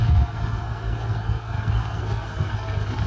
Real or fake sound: fake